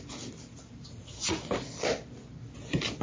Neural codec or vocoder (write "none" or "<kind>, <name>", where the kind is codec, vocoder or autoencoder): none